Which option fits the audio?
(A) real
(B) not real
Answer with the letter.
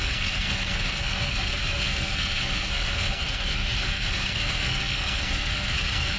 B